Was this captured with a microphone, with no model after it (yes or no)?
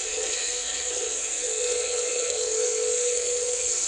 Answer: no